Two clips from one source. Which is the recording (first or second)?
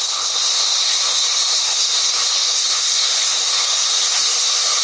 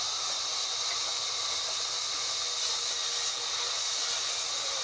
second